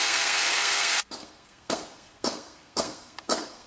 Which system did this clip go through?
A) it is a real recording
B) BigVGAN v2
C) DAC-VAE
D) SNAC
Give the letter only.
D